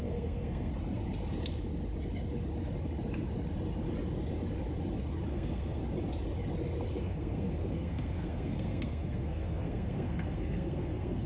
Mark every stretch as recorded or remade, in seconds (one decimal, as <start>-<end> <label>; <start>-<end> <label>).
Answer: 0.0-0.7 remade; 0.7-5.3 recorded; 5.3-5.8 remade; 5.8-7.0 recorded; 7.0-11.3 remade